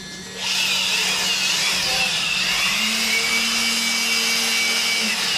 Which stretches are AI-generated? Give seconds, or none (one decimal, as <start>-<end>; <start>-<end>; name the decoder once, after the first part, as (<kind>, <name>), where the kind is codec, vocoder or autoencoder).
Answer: 1.9-3.3 (vocoder, BigVGAN v2)